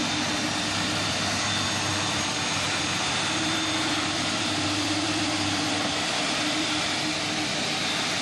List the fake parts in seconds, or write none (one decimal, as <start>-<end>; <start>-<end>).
1.9-6.8